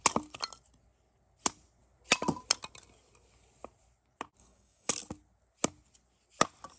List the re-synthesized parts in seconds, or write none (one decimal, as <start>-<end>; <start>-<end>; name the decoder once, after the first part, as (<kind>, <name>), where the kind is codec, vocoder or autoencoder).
4.4-4.9 (codec, DAC)